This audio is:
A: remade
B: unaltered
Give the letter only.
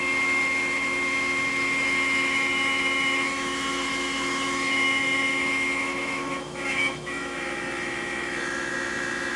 A